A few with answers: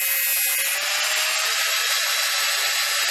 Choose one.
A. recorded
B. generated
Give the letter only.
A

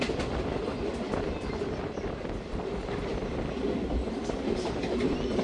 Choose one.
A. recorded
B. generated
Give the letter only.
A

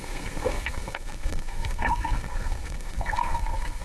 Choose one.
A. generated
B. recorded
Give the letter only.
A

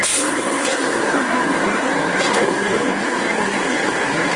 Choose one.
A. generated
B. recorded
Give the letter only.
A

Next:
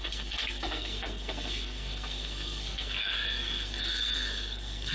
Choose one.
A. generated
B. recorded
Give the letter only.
A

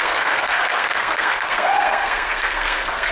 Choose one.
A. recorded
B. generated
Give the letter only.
B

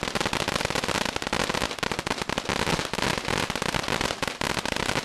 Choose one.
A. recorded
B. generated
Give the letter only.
A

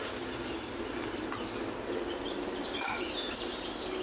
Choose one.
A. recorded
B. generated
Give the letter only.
A